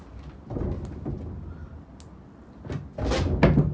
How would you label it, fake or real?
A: real